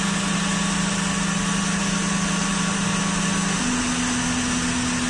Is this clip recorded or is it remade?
recorded